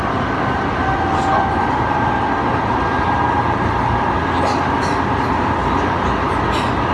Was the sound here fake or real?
real